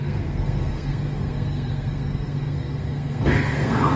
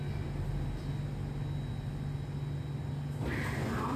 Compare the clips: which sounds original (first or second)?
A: second